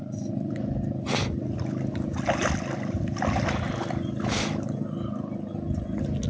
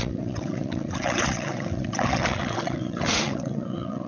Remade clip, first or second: second